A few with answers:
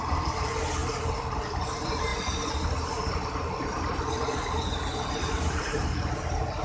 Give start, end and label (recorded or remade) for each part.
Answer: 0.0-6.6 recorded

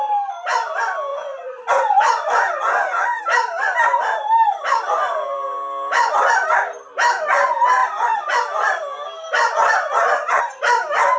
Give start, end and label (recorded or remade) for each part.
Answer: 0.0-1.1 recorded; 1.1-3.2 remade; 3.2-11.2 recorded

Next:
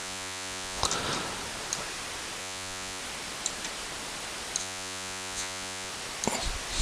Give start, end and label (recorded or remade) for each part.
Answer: 0.0-0.8 remade; 0.8-2.4 recorded; 2.4-3.0 remade; 3.0-4.6 recorded; 4.6-5.9 remade; 5.9-6.8 recorded

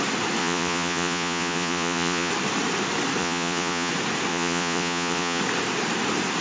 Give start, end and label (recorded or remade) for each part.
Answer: 0.0-0.4 recorded; 0.4-2.3 remade; 2.3-3.2 recorded; 3.2-3.9 remade; 3.9-4.3 recorded; 4.3-5.4 remade; 5.4-6.4 recorded

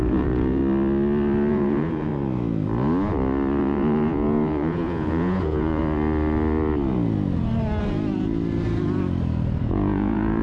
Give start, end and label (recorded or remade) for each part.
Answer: 0.0-0.6 remade; 0.6-1.5 recorded; 1.5-2.1 remade; 2.1-3.6 recorded; 3.6-5.8 remade; 5.8-9.6 recorded; 9.6-10.4 remade

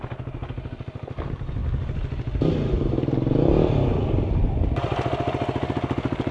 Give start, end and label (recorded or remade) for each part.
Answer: 0.0-6.3 recorded